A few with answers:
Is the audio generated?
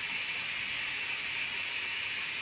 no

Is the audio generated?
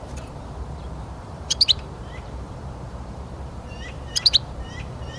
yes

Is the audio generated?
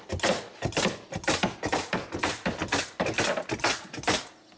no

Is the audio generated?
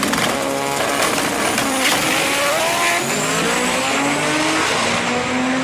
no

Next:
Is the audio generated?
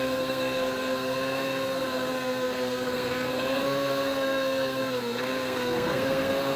yes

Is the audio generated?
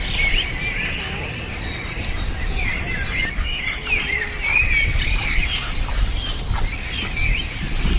no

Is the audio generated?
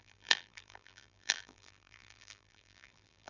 yes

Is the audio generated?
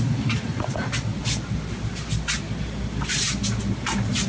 no